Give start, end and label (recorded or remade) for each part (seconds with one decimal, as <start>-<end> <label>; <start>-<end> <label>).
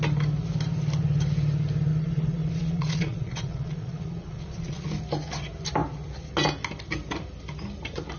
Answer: 0.0-1.9 recorded; 1.9-4.9 remade; 4.9-8.2 recorded